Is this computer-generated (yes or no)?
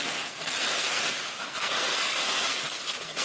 yes